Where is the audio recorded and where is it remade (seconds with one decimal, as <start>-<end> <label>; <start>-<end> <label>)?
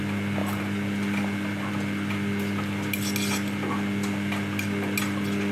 0.0-5.5 recorded